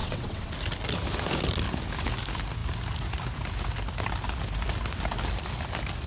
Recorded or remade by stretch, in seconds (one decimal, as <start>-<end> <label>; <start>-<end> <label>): 0.0-0.5 remade; 0.5-6.1 recorded